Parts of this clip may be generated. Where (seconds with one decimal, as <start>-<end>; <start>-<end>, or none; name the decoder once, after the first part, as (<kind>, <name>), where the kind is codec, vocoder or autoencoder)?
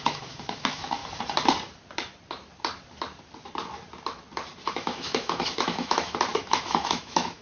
0.0-1.0 (autoencoder, DAC-VAE); 4.7-7.4